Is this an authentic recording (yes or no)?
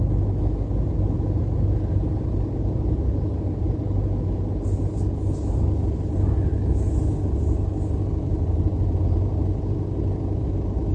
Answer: yes